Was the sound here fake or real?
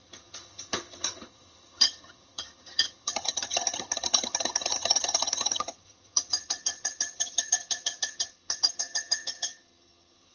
fake